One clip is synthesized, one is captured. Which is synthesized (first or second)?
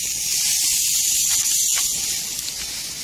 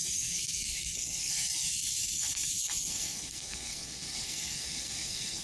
second